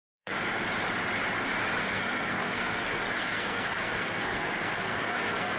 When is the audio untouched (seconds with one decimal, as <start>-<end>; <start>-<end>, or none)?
0.7-1.8